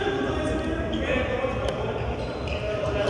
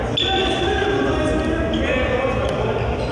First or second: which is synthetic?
first